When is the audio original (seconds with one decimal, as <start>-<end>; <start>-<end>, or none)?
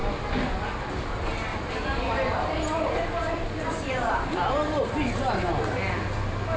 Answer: 0.0-1.5; 2.6-3.2; 5.6-6.6